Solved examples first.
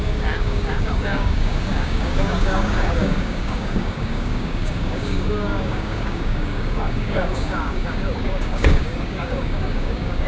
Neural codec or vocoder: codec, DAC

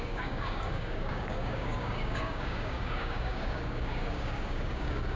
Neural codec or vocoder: codec, DAC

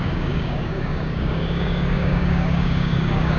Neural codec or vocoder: codec, DAC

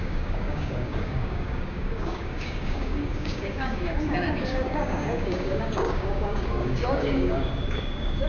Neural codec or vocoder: codec, DAC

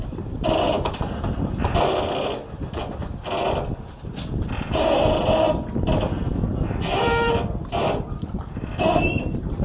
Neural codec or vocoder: none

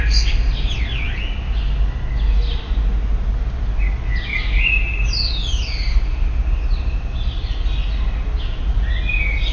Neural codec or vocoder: none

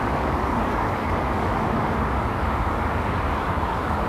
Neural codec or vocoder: codec, DAC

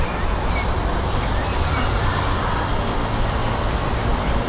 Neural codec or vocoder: none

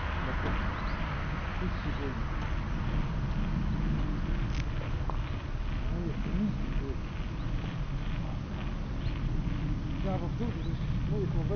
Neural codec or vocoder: none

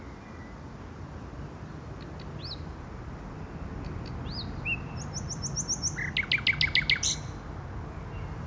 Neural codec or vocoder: none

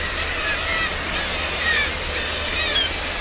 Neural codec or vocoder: none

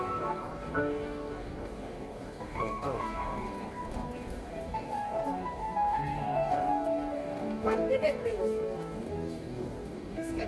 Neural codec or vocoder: codec, DAC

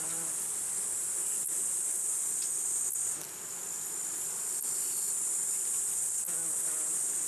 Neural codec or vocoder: none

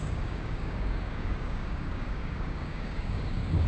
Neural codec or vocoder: codec, DAC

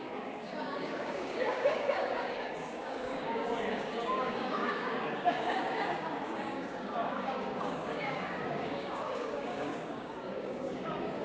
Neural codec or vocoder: codec, DAC